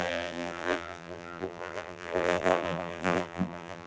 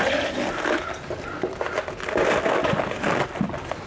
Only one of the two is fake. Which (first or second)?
first